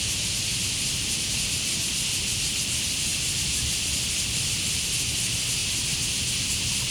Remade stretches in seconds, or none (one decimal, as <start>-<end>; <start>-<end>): none